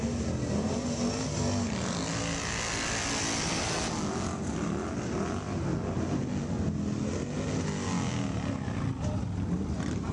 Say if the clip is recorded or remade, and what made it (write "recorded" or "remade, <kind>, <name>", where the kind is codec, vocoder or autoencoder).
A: recorded